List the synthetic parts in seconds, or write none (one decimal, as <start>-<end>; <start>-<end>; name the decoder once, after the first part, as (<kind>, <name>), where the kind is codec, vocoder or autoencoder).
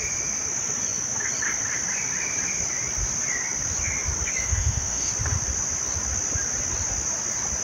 4.4-5.1 (autoencoder, DAC-VAE)